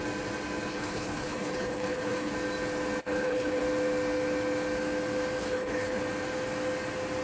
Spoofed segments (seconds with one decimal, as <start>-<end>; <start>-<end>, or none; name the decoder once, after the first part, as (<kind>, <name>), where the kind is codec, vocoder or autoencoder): 0.7-2.3 (codec, HILCodec); 3.0-3.6; 5.4-6.0